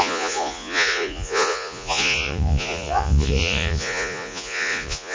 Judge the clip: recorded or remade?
remade